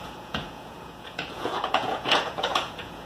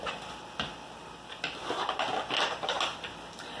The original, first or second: second